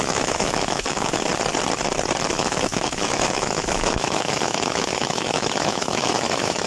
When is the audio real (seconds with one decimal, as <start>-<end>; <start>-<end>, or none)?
1.3-2.3